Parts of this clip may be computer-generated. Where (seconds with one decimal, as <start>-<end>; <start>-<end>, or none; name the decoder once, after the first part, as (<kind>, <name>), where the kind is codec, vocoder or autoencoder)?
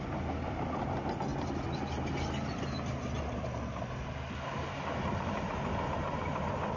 none